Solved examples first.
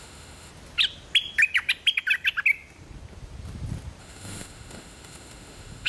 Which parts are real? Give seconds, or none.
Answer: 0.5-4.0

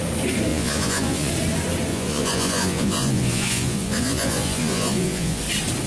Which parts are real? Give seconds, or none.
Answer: 0.0-0.5; 1.3-1.9; 5.4-5.9

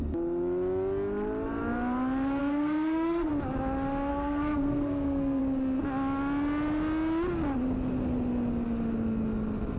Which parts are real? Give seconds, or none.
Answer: 0.0-2.4; 3.3-4.1; 5.4-9.8

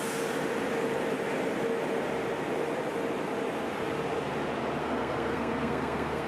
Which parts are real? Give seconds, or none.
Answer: 0.0-4.8

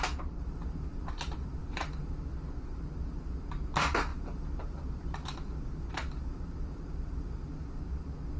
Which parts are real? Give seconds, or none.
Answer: 0.0-1.6; 2.2-4.1; 7.8-8.4

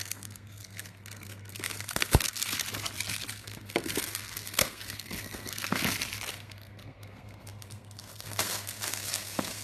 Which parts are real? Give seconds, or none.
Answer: 2.6-3.3; 5.8-6.3

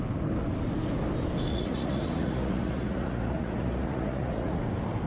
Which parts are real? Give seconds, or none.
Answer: 0.0-1.5; 4.6-5.1

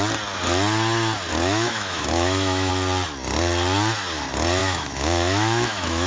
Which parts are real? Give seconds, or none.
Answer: 0.0-1.3; 2.7-4.6